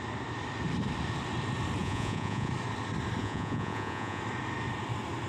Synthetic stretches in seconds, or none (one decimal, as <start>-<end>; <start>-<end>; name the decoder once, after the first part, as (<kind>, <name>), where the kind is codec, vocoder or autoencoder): 1.8-2.5 (vocoder, Vocos); 3.2-4.2